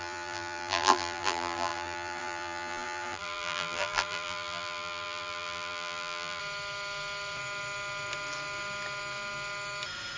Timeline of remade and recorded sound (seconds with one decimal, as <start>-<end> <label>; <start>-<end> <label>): 0.0-6.4 remade; 6.4-10.2 recorded